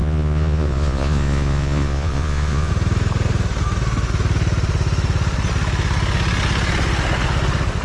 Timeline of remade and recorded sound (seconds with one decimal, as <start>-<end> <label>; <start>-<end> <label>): 0.0-2.7 remade; 2.7-7.8 recorded